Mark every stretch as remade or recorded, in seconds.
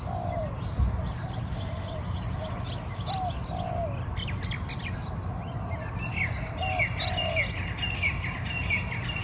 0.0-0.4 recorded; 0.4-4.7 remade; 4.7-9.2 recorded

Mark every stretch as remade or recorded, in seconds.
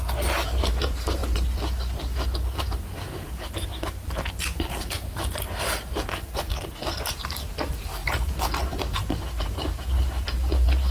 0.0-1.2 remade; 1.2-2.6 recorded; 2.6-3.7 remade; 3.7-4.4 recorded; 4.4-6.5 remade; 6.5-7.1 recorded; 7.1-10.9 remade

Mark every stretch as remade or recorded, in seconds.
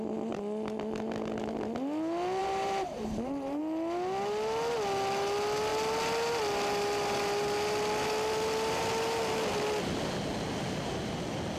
0.0-2.4 recorded; 2.4-3.6 remade; 3.6-11.6 recorded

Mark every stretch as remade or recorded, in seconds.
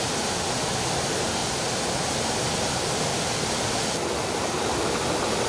0.0-3.1 recorded; 3.1-4.9 remade; 4.9-5.5 recorded